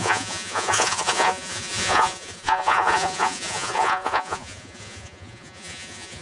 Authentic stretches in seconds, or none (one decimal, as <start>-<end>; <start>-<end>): none